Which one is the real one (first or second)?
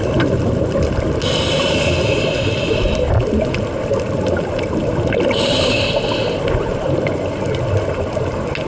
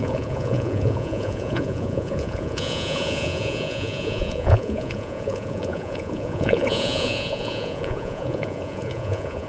first